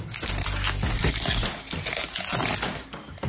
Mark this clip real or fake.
real